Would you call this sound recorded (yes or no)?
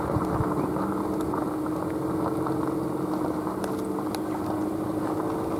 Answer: yes